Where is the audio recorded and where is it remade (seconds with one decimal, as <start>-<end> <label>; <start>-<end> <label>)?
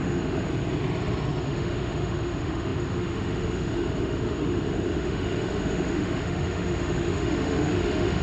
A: 0.0-0.5 remade; 0.5-1.4 recorded; 1.4-8.2 remade